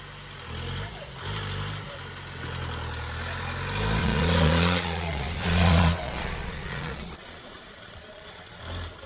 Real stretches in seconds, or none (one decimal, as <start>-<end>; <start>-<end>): 0.0-4.0; 8.6-9.1